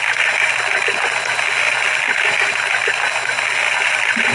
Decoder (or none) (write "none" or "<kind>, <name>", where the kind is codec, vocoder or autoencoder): none